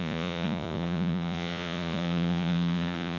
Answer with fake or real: fake